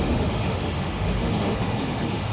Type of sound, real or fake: fake